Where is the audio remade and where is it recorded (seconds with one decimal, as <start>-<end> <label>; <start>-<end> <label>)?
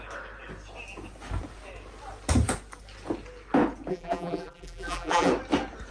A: 0.0-3.9 recorded; 3.9-5.3 remade; 5.3-5.9 recorded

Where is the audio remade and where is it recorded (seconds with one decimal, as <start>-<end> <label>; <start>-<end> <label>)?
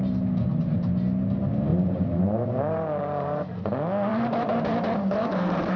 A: 0.0-1.7 recorded; 1.7-3.6 remade; 3.6-4.1 recorded; 4.1-5.8 remade